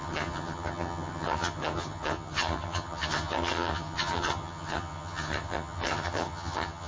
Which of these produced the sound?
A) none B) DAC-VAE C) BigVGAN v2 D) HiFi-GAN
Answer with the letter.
D